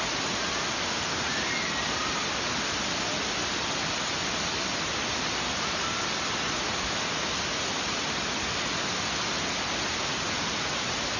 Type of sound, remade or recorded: recorded